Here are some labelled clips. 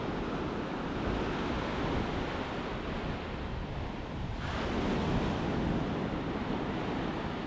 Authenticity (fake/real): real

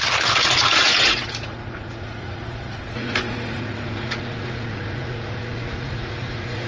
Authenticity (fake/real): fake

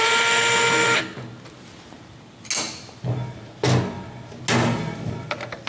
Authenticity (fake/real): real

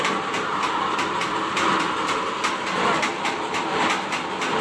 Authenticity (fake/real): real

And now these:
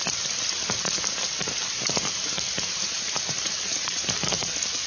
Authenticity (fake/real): real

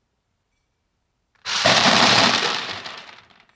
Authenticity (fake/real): fake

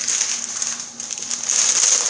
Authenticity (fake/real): real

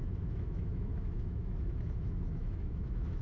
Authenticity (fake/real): fake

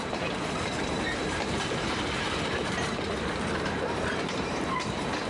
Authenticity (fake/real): fake